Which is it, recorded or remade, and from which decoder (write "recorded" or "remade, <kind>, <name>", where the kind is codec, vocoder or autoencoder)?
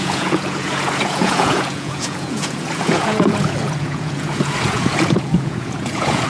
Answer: remade, vocoder, Vocos